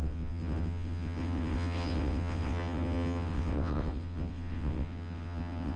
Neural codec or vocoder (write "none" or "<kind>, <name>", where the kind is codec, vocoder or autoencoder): vocoder, WaveNeXt